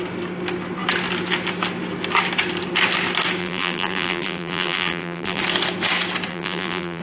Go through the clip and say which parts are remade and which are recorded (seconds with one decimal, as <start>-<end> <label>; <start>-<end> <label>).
0.0-3.4 recorded; 3.4-5.4 remade; 5.4-6.3 recorded; 6.3-7.0 remade